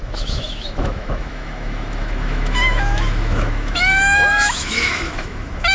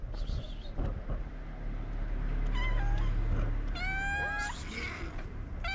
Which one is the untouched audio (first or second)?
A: second